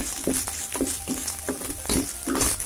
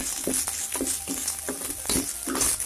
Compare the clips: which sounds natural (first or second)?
second